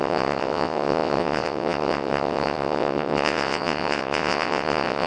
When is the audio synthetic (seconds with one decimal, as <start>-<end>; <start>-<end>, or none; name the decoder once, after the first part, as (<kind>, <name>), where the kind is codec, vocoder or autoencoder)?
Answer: 0.0-5.1 (vocoder, WaveNeXt)